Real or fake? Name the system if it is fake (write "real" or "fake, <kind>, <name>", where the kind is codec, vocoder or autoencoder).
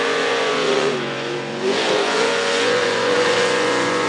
fake, vocoder, Vocos